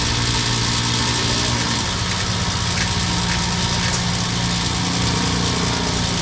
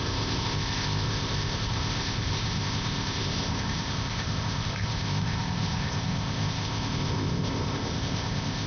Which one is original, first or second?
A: first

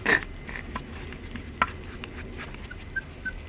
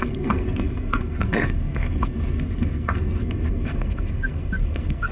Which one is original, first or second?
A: first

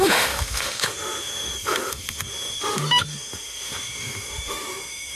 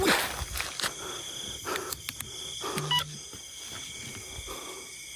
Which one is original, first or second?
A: second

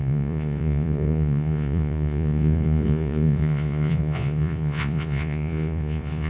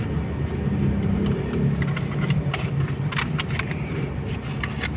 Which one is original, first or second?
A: second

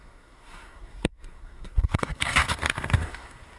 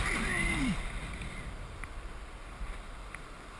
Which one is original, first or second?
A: second